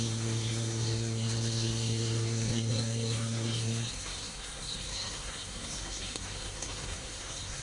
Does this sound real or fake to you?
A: fake